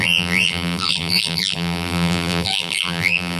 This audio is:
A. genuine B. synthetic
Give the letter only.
B